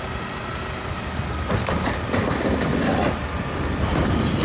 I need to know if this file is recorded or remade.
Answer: recorded